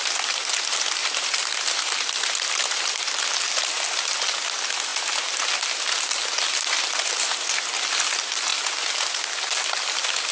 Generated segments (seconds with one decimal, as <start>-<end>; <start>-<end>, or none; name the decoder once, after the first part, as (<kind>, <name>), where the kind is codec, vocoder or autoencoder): none